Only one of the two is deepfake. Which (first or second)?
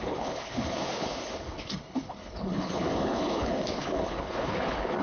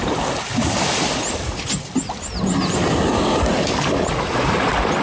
first